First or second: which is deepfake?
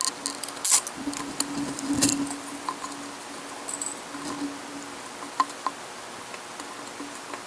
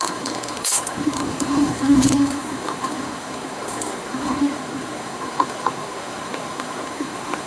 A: second